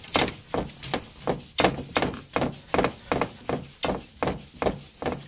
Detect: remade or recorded recorded